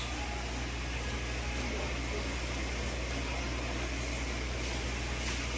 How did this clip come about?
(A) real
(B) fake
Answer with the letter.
A